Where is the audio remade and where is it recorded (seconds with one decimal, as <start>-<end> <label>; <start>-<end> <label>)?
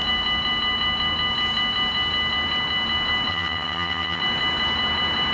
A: 0.0-3.3 recorded; 3.3-4.2 remade; 4.2-5.3 recorded